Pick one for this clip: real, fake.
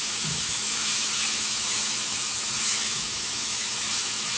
fake